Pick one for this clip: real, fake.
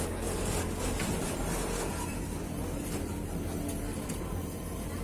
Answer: real